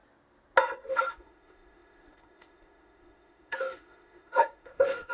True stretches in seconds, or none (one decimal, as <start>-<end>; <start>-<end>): 0.0-0.9